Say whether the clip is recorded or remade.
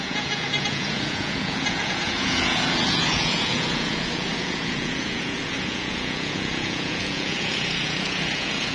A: remade